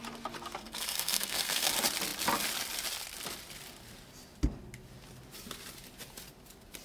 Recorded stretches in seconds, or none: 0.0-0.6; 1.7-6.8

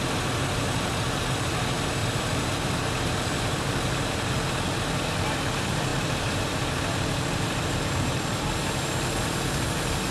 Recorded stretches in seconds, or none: 0.0-2.0; 4.3-5.9; 9.0-10.1

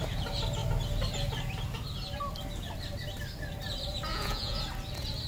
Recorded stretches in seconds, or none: 0.0-4.1; 4.6-5.3

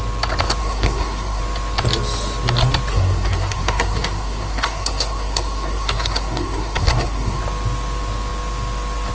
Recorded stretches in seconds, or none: 0.0-0.6; 1.4-2.9; 7.4-9.1

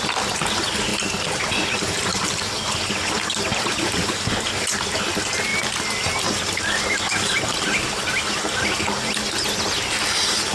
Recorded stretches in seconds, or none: 0.0-10.5